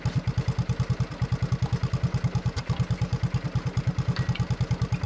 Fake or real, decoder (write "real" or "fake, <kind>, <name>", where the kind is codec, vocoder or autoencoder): real